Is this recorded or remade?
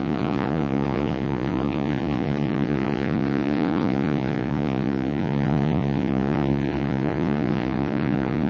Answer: remade